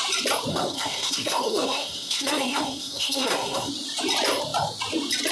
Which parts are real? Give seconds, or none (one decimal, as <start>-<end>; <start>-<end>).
0.0-0.5; 3.7-5.3